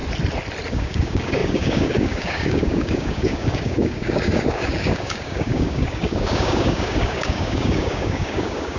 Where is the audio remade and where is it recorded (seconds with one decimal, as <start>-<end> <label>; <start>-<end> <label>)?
0.0-0.7 recorded; 0.7-8.8 remade